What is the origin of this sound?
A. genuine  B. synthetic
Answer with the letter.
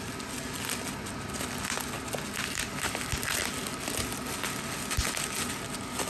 A